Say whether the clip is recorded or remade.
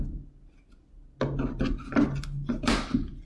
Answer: recorded